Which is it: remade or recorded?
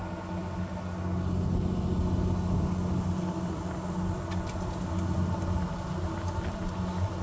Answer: recorded